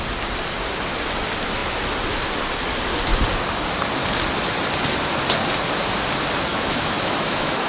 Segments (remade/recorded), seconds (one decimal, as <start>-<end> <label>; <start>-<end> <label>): 0.0-6.5 recorded; 6.5-7.7 remade